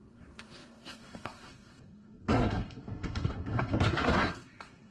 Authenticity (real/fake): fake